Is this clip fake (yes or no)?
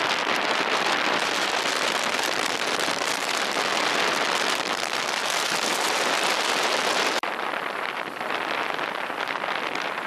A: yes